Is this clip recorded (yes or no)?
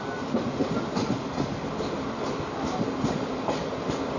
yes